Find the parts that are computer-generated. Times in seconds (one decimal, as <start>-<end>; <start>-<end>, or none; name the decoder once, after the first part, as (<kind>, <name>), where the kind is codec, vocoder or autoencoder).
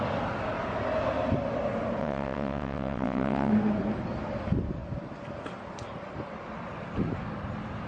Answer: 2.0-3.5 (vocoder, WaveNeXt)